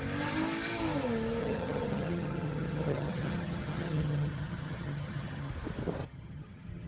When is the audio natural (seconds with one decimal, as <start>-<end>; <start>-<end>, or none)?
0.0-1.4; 5.5-6.0